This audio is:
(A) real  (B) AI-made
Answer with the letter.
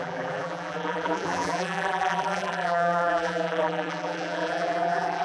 B